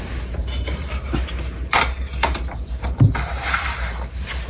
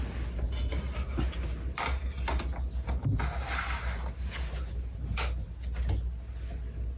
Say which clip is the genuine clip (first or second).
second